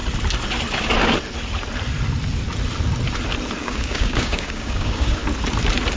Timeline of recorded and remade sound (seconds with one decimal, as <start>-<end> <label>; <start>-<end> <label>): 0.0-3.6 recorded; 3.6-5.2 remade; 5.2-6.0 recorded